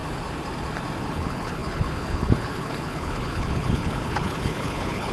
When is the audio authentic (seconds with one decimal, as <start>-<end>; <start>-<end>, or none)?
0.0-1.0